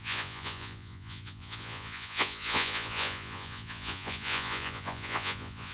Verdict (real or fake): fake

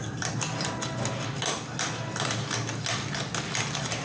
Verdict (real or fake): real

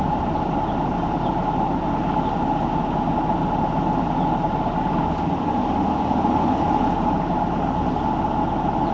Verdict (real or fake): real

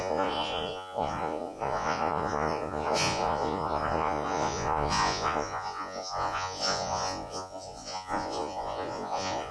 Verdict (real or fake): fake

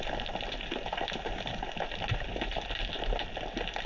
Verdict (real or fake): real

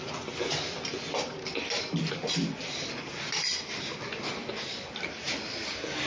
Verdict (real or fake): real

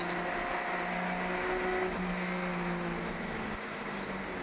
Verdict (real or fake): real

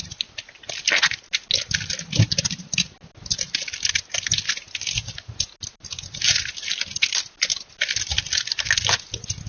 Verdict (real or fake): real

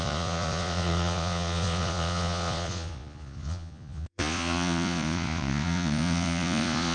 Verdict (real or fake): fake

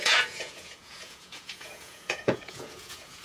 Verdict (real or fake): fake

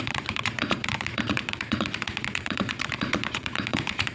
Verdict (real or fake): fake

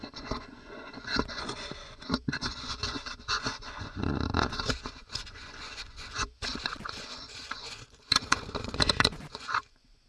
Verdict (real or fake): fake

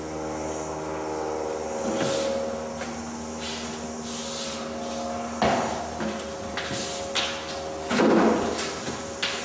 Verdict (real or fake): real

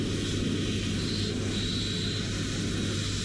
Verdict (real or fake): real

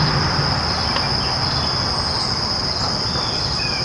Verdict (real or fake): real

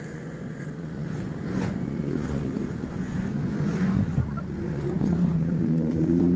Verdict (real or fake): fake